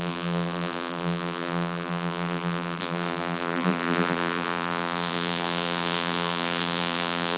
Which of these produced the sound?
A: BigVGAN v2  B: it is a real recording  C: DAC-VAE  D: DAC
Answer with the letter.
A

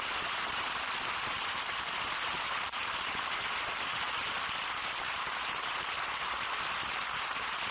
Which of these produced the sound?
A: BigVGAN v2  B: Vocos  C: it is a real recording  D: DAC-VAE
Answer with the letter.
A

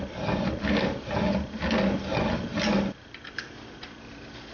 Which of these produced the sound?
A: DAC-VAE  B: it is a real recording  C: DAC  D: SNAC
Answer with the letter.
B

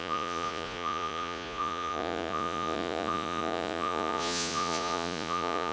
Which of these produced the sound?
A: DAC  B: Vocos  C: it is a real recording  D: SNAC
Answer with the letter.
B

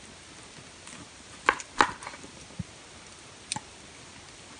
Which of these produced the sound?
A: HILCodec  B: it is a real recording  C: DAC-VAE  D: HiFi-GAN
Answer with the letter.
B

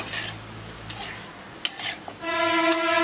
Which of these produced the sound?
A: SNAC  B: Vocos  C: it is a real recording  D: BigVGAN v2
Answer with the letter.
C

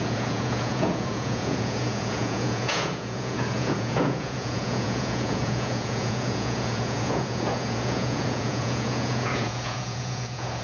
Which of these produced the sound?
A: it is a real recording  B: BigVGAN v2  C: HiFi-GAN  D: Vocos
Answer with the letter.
D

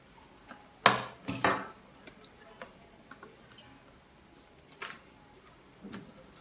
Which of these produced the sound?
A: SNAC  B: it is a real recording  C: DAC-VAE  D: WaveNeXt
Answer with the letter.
B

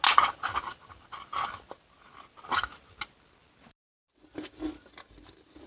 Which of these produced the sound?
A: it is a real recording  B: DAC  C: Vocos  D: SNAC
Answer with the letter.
A